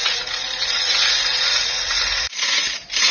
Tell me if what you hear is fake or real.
fake